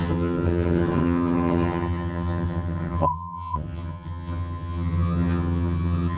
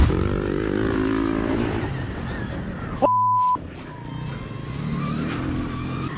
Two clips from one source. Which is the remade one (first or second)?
first